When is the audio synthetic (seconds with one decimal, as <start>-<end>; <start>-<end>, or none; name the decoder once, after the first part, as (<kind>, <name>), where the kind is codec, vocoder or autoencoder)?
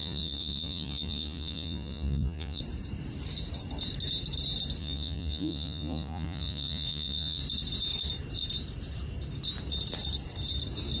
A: 0.0-2.6 (vocoder, Vocos); 4.8-7.4